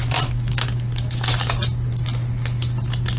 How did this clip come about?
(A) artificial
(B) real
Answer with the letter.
B